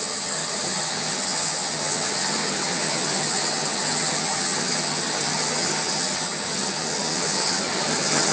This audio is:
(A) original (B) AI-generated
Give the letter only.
B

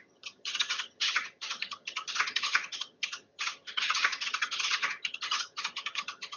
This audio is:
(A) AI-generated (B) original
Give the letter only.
A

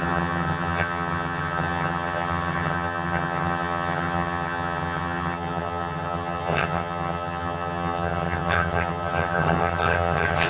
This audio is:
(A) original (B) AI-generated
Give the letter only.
B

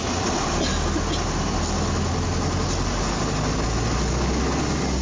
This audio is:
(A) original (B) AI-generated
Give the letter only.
A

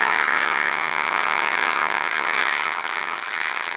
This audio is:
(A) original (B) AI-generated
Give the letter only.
B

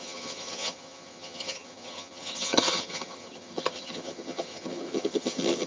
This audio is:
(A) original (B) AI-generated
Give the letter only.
B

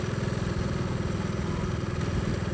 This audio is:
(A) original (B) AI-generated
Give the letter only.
A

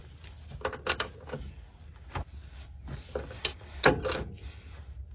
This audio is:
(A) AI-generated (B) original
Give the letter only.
B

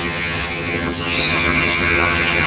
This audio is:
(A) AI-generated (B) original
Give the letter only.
A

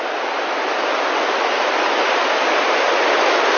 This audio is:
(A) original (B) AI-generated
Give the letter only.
A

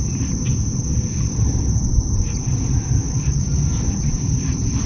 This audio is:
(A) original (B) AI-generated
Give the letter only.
A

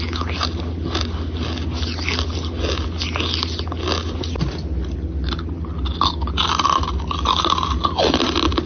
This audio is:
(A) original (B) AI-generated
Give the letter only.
A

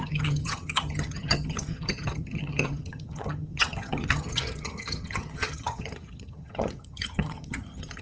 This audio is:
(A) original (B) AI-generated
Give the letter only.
B